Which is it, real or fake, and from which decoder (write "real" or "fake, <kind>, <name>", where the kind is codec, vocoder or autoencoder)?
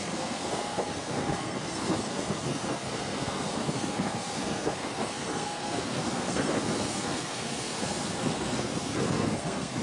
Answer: fake, codec, SNAC